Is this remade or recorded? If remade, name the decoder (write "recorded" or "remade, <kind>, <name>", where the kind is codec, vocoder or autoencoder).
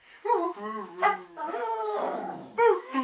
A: remade, autoencoder, DAC-VAE